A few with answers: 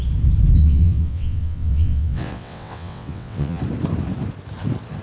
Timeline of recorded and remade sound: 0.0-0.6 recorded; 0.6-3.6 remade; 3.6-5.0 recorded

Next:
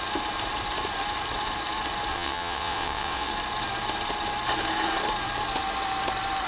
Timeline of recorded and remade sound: 0.0-2.1 recorded; 2.1-3.3 remade; 3.3-6.5 recorded

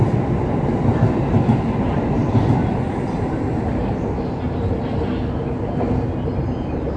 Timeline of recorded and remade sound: 0.0-7.0 recorded